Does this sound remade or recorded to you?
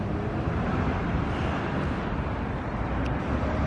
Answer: recorded